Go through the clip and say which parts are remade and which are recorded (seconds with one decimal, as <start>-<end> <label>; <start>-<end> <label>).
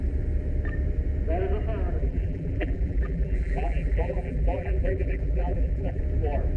0.0-2.0 recorded; 2.0-6.0 remade; 6.0-6.6 recorded